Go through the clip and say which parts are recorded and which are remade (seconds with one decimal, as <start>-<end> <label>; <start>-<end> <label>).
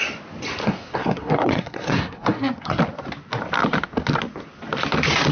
0.0-0.6 recorded; 0.6-2.8 remade; 2.8-5.3 recorded